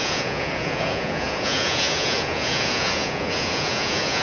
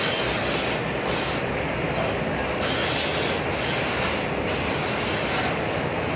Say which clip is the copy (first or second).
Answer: first